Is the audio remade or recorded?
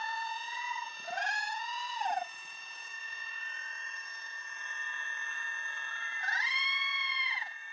remade